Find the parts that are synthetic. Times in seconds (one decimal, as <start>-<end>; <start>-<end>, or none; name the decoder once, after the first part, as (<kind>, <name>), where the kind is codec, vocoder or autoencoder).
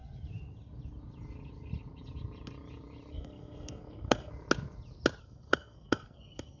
3.1-4.3 (codec, SNAC); 5.2-6.6